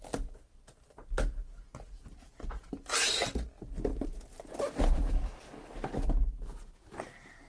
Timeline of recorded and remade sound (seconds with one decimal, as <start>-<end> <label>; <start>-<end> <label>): 0.0-3.9 recorded; 3.9-5.4 remade; 5.4-7.5 recorded